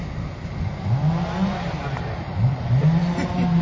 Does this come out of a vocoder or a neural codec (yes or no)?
no